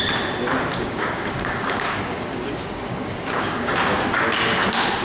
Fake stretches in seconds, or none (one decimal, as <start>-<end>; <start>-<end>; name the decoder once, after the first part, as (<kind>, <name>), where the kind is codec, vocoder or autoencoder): 0.7-3.7 (codec, DAC)